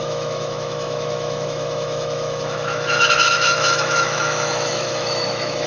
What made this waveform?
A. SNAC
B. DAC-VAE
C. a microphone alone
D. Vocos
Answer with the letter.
B